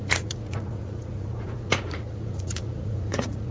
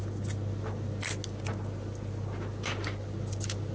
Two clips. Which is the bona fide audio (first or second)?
second